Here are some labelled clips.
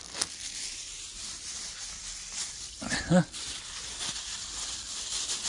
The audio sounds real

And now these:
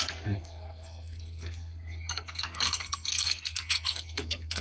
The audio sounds fake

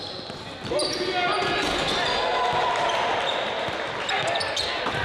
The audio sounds real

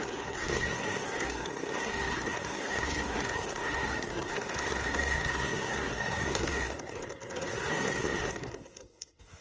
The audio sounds fake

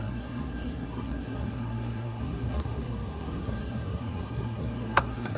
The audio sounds fake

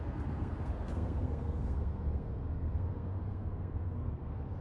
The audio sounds fake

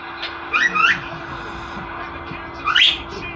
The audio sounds real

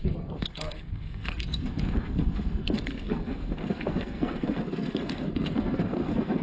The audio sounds fake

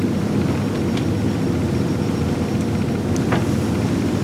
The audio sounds real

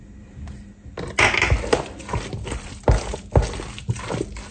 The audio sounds real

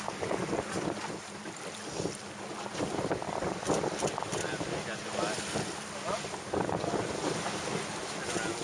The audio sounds real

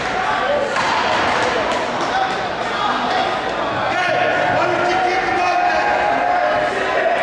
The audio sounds real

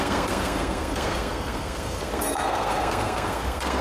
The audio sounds fake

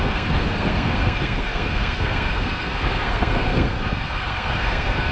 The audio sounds fake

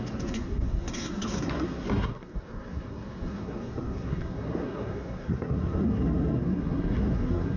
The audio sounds fake